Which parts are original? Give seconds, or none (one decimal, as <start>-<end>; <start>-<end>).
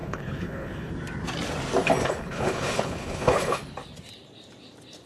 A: 0.9-2.0; 3.6-5.1